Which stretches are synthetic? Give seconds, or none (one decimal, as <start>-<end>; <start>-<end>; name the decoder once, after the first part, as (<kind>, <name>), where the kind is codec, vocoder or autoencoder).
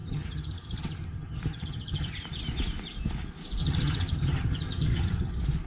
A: 0.0-2.2 (vocoder, HiFi-GAN); 3.6-5.3